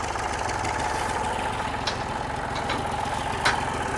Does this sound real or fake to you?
real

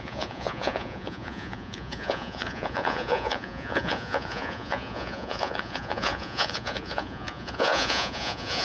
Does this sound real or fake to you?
fake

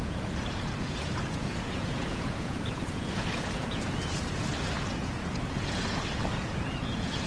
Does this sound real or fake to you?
fake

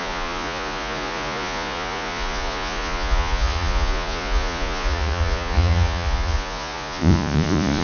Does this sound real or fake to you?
fake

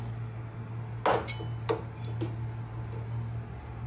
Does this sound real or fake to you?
real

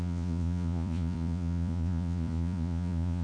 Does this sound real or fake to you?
fake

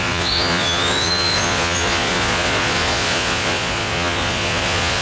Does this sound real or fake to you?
fake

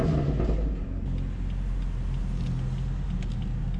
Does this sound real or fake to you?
real